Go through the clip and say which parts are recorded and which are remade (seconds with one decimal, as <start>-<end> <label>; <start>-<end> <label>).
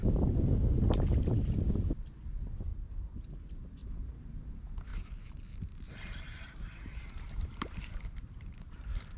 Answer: 0.0-2.7 recorded; 2.7-3.2 remade; 3.2-3.8 recorded; 3.8-4.3 remade; 4.3-4.9 recorded; 4.9-9.2 remade